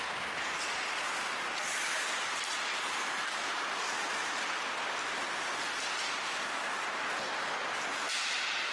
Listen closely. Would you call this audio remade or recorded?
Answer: recorded